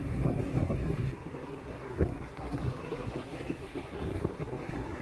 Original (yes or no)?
no